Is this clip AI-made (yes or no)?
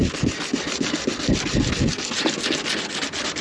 no